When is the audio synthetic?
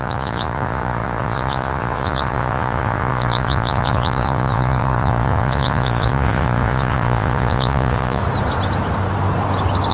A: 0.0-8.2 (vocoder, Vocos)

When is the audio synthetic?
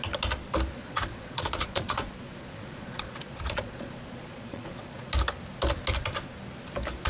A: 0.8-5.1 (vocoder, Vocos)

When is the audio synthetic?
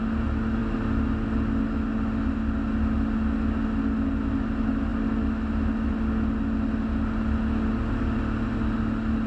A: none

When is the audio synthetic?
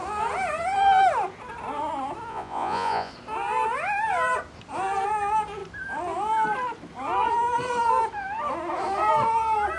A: 2.3-3.1 (vocoder, Vocos)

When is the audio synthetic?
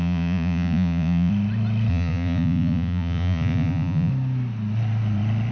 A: 0.0-1.3 (vocoder, Vocos); 1.9-4.1